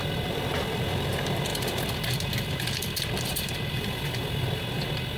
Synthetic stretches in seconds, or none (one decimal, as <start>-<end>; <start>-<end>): 0.0-1.5; 2.5-5.2